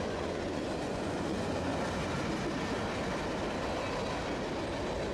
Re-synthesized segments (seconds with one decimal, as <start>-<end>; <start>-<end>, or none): 0.0-1.7